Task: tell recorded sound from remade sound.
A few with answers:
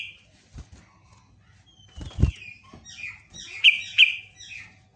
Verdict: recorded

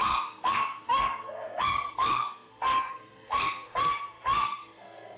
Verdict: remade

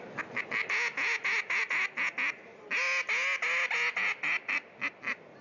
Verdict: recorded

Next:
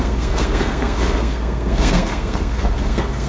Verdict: remade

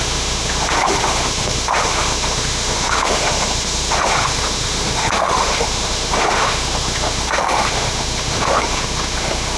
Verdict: remade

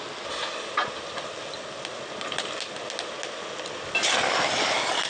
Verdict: recorded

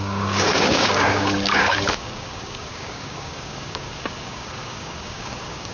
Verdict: remade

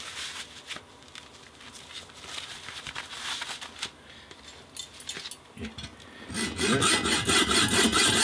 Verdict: recorded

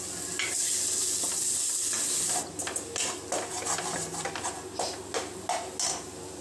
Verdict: recorded